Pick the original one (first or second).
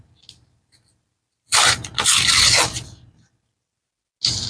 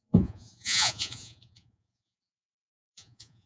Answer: first